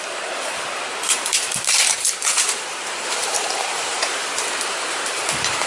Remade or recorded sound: remade